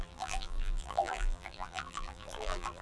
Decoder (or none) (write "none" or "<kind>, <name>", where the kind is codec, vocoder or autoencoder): vocoder, BigVGAN v2